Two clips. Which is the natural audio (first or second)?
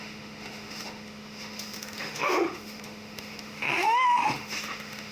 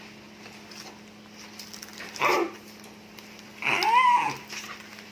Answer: second